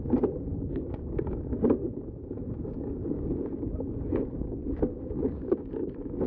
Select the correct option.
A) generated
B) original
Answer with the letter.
A